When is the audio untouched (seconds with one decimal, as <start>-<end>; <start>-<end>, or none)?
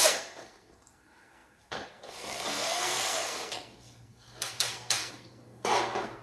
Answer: none